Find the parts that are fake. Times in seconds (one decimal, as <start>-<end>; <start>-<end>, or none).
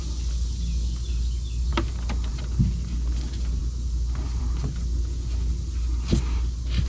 none